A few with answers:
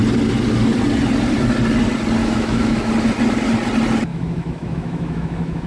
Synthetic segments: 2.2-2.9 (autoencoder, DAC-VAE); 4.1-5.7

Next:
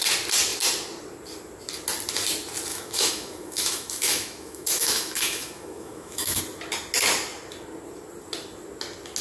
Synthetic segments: 2.7-6.4 (autoencoder, DAC-VAE)

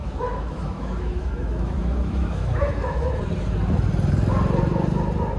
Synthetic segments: 0.0-3.2 (autoencoder, DAC-VAE)

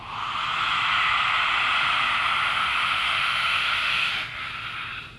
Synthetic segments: 2.5-4.1 (autoencoder, DAC-VAE)

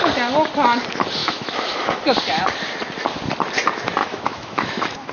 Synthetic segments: 1.2-2.0 (autoencoder, DAC-VAE); 4.0-5.1

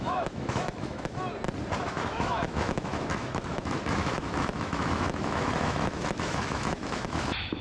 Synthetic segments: 0.0-1.2 (autoencoder, DAC-VAE); 1.8-7.6

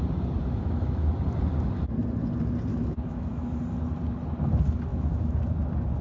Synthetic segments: 0.5-1.1 (autoencoder, DAC-VAE); 2.7-3.6; 4.9-5.4